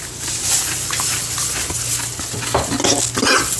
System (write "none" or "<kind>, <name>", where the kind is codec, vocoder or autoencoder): none